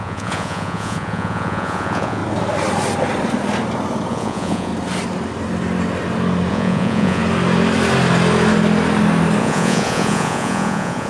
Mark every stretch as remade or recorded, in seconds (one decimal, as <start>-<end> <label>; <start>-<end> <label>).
0.0-2.2 remade; 2.2-4.1 recorded; 4.1-4.7 remade; 4.7-6.5 recorded; 6.5-7.2 remade; 7.2-9.4 recorded; 9.4-11.1 remade